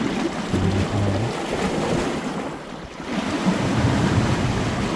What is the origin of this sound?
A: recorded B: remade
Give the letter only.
A